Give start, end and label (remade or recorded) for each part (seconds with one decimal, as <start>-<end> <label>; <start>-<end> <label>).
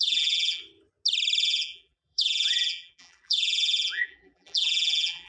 0.0-0.6 remade; 0.6-1.4 recorded; 1.4-5.3 remade